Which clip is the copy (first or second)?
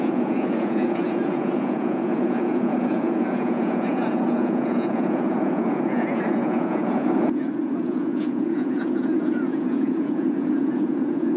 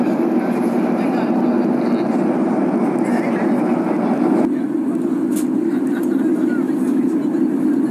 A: first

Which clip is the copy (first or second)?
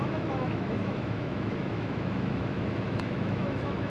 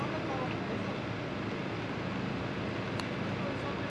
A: first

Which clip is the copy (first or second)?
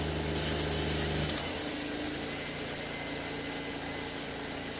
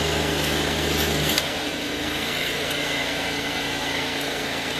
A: second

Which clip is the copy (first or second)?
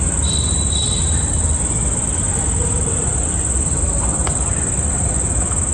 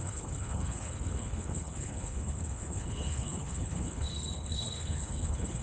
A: second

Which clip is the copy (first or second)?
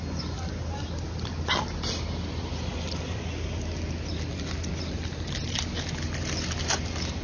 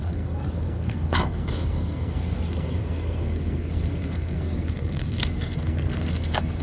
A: second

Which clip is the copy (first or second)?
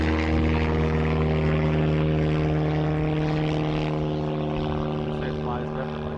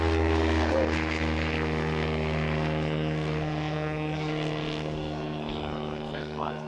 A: second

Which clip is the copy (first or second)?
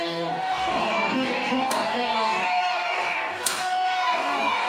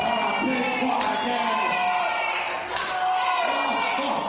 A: first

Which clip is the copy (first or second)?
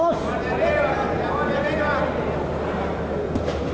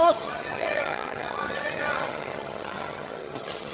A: second